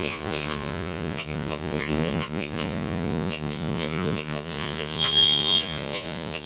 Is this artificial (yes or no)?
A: yes